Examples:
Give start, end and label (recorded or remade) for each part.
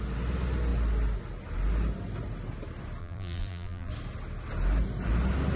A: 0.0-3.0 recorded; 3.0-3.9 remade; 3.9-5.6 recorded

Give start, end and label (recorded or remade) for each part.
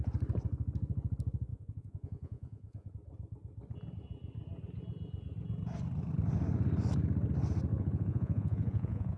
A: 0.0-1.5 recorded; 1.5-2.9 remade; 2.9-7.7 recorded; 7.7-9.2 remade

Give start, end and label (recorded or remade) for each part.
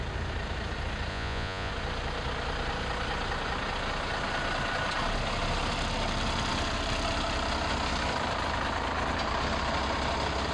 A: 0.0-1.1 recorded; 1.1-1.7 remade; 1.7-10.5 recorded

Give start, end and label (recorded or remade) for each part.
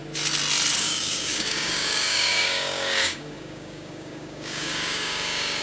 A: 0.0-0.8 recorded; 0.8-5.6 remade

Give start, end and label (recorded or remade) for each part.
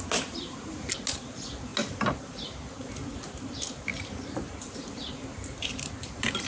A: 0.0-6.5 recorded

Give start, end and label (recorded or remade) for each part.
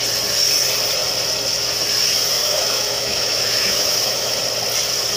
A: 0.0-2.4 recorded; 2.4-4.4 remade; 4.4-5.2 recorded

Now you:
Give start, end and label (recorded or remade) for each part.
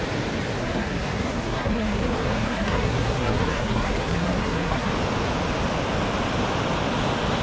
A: 0.0-0.6 recorded; 0.6-4.9 remade; 4.9-7.4 recorded